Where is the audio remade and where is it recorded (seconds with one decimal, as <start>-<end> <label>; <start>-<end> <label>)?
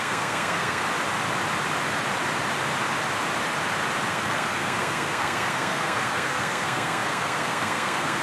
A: 0.0-0.8 remade; 0.8-4.1 recorded; 4.1-8.2 remade